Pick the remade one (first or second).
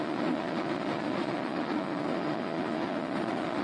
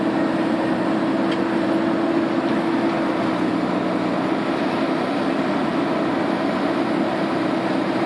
first